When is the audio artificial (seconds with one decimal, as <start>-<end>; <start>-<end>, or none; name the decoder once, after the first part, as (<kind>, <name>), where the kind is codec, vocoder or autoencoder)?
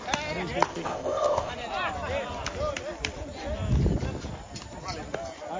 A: 0.7-1.5 (codec, ZipCodec)